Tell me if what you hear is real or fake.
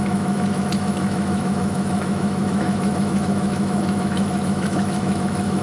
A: fake